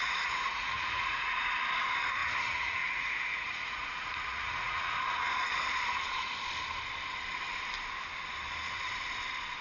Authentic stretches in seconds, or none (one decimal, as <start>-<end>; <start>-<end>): 1.5-2.2; 4.9-9.6